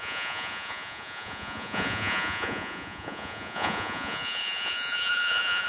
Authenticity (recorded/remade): remade